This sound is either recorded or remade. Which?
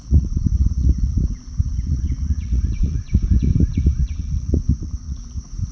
remade